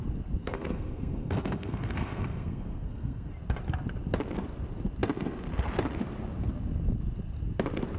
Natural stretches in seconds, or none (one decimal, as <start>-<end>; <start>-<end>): 0.0-0.4; 3.3-8.0